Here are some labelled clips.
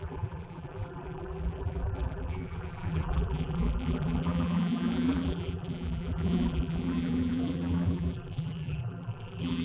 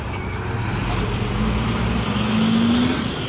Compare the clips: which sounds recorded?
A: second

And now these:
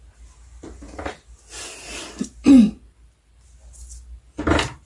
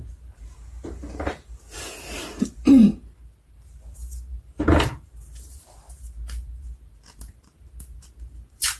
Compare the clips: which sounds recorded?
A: first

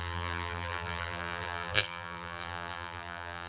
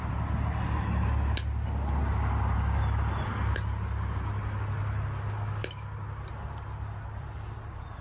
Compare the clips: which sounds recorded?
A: second